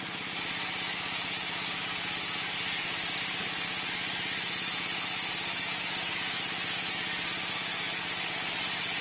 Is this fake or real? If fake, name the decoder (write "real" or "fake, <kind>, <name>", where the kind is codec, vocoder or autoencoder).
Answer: real